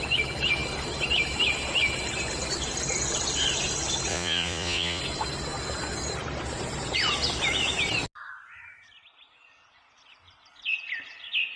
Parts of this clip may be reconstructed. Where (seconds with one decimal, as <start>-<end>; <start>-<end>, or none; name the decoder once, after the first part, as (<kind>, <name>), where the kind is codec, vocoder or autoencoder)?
4.1-5.0 (vocoder, Vocos)